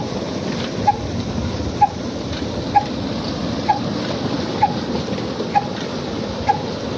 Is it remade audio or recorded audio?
recorded